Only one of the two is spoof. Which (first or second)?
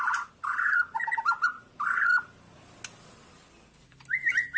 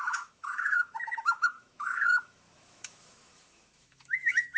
second